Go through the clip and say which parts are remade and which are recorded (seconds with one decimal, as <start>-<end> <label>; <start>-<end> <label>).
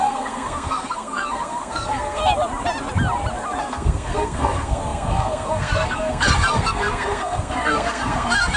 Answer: 0.0-2.2 remade; 2.2-3.6 recorded; 3.6-8.6 remade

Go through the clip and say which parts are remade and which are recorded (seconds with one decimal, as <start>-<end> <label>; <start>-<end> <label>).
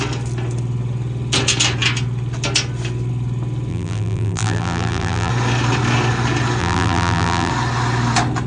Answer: 0.0-3.7 recorded; 3.7-5.3 remade; 5.3-6.6 recorded; 6.6-7.5 remade; 7.5-8.5 recorded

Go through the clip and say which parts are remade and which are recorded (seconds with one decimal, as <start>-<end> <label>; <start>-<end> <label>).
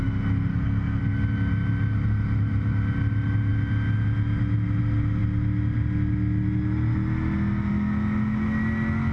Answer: 0.0-0.5 recorded; 0.5-1.0 remade; 1.0-9.1 recorded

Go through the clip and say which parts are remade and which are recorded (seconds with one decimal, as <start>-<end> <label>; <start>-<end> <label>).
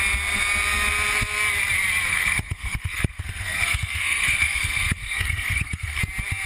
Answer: 0.0-2.1 recorded; 2.1-6.0 remade; 6.0-6.5 recorded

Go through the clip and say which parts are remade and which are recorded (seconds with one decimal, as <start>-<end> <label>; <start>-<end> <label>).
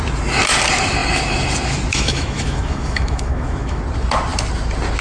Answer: 0.0-1.9 recorded; 1.9-3.8 remade; 3.8-5.0 recorded